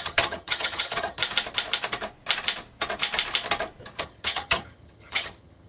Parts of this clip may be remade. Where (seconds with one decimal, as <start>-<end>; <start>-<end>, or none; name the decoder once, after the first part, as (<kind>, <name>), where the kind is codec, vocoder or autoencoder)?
0.0-1.2 (vocoder, HiFi-GAN); 4.0-5.7

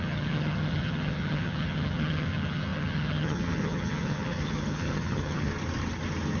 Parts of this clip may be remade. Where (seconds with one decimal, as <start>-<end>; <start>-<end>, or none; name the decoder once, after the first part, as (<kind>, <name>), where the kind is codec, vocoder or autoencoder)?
0.0-5.5 (vocoder, HiFi-GAN)

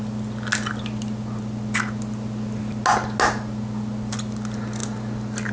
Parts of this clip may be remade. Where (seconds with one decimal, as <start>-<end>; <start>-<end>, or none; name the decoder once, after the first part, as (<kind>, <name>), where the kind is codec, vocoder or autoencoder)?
none

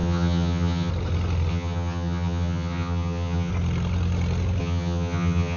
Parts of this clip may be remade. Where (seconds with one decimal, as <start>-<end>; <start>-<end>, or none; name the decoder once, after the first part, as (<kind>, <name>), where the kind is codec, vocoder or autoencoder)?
0.0-0.9 (vocoder, HiFi-GAN); 1.5-3.5; 4.6-5.6